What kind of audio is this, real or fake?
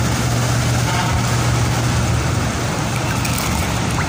real